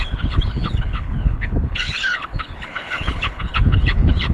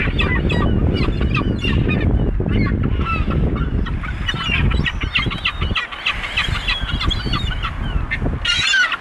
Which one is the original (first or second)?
second